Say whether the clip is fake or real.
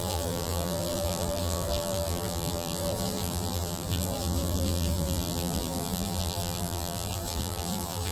fake